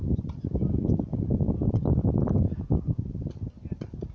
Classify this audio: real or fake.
real